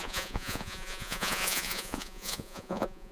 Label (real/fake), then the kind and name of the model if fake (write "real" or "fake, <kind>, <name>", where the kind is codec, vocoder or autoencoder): fake, vocoder, Vocos